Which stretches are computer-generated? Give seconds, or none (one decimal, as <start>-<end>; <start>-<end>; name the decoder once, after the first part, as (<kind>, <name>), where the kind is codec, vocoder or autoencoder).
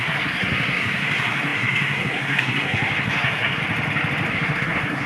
0.0-3.6 (codec, SNAC); 4.3-5.1